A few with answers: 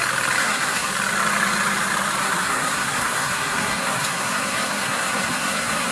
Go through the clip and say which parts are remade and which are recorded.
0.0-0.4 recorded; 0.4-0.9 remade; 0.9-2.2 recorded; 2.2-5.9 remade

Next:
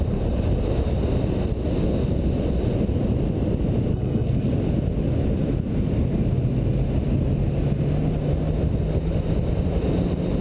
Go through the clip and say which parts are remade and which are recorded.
0.0-3.9 recorded; 3.9-4.5 remade; 4.5-10.4 recorded